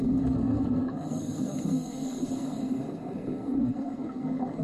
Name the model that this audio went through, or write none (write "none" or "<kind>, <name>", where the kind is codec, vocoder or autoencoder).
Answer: codec, SNAC